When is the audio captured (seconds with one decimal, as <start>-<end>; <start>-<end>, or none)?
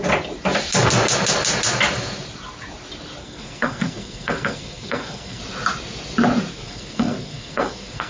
0.0-3.2; 5.4-6.5